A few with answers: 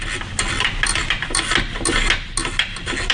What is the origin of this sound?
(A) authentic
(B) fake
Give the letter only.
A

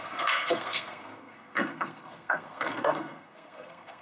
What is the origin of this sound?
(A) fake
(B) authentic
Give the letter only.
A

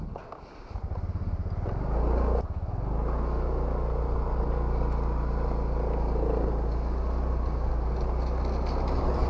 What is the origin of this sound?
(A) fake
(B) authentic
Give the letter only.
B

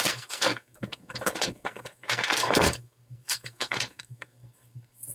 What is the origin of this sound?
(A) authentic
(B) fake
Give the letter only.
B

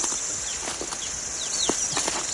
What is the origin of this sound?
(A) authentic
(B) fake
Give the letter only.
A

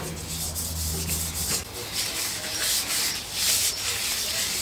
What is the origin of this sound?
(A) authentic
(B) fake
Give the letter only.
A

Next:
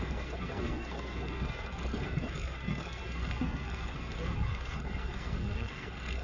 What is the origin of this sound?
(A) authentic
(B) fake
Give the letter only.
B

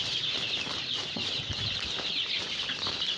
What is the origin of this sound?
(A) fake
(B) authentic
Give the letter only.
B